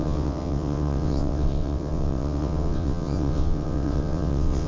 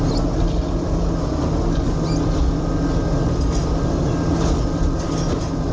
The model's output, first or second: first